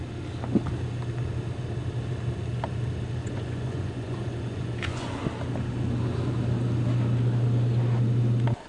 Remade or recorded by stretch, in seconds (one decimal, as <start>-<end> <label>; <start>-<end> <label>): 0.0-3.2 recorded; 3.2-5.1 remade; 5.1-8.7 recorded